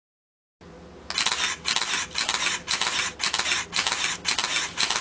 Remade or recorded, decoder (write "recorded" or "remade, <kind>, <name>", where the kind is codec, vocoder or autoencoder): recorded